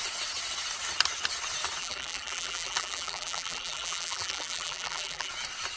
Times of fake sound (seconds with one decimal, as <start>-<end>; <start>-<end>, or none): 1.8-5.3